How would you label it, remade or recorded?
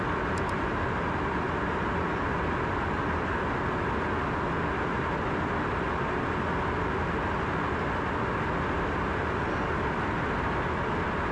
recorded